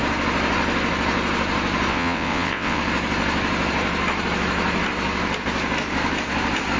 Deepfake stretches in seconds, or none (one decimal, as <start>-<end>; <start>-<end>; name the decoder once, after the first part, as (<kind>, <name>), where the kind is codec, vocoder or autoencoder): 1.9-2.8 (vocoder, WaveNeXt)

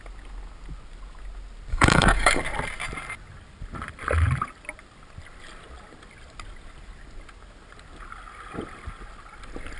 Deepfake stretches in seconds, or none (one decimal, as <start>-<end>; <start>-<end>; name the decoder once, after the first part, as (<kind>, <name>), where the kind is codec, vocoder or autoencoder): 1.7-2.4 (codec, DAC)

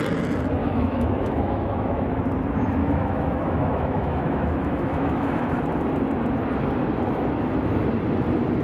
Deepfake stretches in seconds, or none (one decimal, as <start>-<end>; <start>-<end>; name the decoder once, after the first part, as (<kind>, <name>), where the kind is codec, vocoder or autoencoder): 0.6-2.2 (autoencoder, DAC-VAE); 2.8-5.6

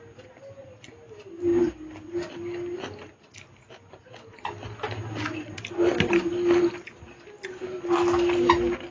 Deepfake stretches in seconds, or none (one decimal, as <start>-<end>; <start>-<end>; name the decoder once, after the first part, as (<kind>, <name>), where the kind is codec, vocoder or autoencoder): none

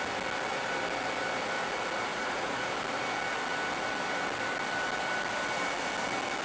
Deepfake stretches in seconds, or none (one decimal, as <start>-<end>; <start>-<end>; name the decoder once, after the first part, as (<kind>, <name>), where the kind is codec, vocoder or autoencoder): 2.1-2.7 (vocoder, Vocos)

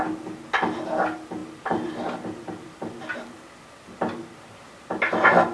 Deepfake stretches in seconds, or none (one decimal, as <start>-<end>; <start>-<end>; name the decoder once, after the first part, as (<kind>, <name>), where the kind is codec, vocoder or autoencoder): 1.4-4.7 (vocoder, BigVGAN v2)

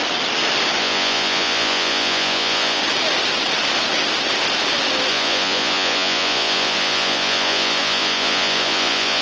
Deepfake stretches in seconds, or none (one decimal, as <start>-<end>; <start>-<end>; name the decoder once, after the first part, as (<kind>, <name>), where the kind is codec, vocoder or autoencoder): 0.8-2.8 (vocoder, Vocos); 5.1-9.2